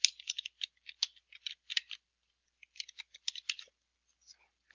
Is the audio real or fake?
real